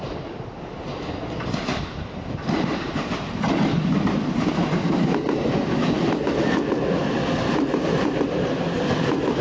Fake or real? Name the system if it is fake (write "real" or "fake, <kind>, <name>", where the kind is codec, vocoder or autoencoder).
real